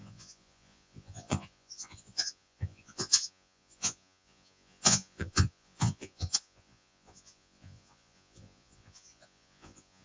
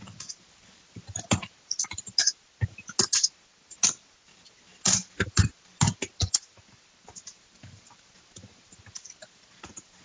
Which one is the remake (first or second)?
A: first